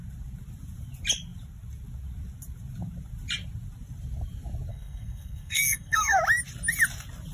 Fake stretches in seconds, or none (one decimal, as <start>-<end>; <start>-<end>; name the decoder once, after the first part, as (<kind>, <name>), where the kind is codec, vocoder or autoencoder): 4.7-6.2 (codec, SNAC)